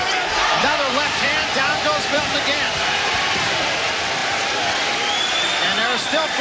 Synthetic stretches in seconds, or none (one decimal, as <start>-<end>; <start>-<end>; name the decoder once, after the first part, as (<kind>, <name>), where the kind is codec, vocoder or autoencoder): 0.0-6.4 (vocoder, BigVGAN v2)